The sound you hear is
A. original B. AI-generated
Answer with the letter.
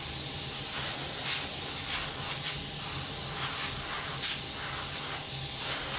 A